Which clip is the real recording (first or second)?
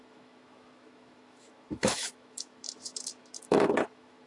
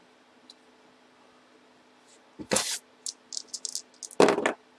second